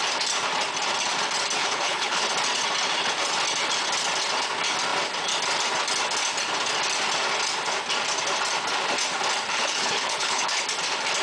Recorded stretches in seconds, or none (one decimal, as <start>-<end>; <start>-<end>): 0.0-1.6; 2.2-9.5; 10.6-11.2